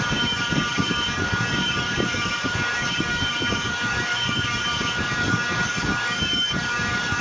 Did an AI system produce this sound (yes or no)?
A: yes